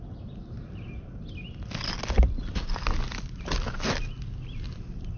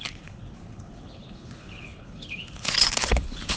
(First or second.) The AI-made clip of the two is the second